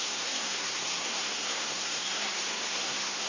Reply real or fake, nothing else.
fake